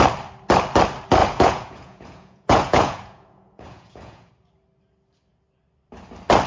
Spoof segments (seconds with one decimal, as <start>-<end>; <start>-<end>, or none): 1.2-4.3